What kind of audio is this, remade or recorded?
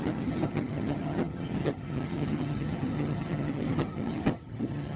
remade